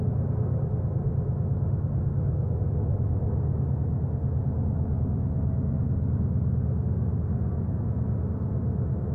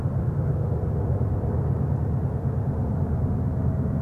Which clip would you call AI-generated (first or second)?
second